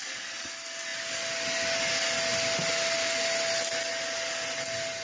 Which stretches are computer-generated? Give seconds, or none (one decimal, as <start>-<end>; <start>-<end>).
none